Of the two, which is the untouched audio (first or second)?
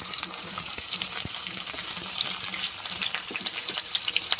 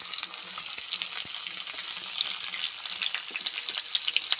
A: second